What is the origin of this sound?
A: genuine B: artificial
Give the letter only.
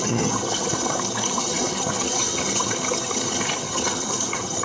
B